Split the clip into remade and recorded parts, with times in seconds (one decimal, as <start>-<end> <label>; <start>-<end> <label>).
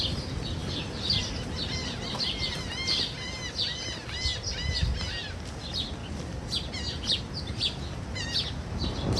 0.0-9.2 recorded